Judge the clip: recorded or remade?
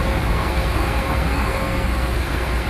remade